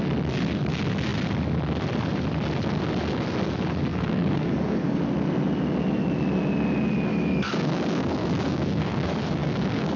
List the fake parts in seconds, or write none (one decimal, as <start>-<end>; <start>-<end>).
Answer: 3.9-5.0; 7.1-10.0